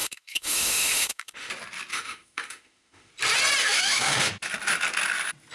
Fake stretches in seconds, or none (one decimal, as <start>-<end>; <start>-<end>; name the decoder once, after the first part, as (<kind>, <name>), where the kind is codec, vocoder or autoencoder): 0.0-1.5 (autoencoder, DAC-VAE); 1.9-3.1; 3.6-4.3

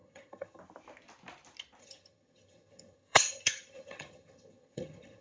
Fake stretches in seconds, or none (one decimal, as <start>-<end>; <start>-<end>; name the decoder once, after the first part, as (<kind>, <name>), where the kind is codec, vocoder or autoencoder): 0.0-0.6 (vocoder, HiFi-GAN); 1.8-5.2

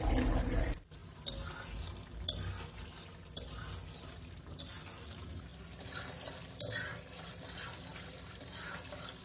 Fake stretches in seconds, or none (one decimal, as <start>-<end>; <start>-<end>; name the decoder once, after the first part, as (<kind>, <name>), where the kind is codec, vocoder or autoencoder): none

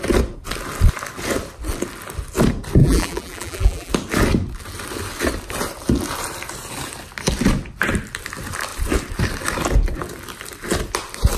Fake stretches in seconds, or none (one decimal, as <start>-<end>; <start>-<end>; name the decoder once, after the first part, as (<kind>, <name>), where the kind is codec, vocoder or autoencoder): 2.8-3.9 (vocoder, BigVGAN v2)